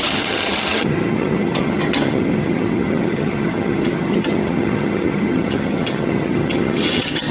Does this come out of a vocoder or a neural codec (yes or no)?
yes